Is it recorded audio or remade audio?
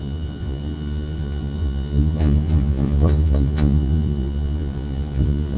remade